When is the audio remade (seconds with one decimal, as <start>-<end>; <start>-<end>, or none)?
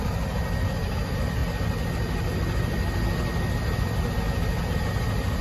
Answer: 0.0-0.9